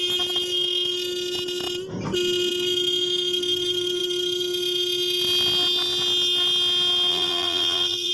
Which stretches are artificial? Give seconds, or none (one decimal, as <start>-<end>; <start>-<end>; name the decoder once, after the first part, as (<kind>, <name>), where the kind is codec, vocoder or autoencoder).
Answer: 7.1-8.1 (vocoder, BigVGAN v2)